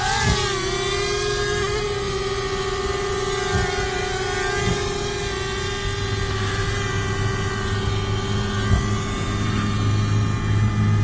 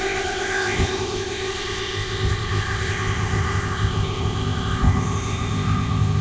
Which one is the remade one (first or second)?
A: second